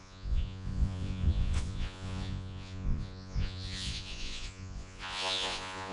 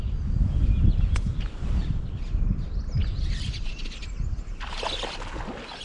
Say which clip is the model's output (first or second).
first